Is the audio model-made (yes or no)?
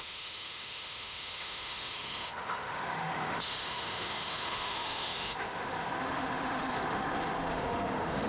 yes